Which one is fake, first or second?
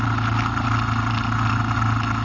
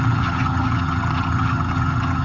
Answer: second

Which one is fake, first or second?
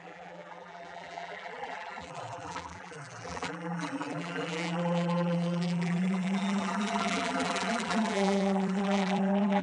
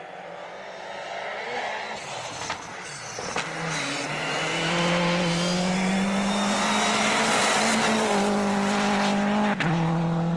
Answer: first